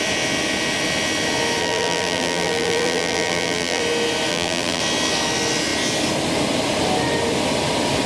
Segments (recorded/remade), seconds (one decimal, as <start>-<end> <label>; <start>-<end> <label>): 0.0-1.6 recorded; 1.6-3.8 remade; 3.8-4.3 recorded; 4.3-4.8 remade; 4.8-8.1 recorded